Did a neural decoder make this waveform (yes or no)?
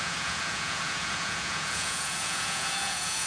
yes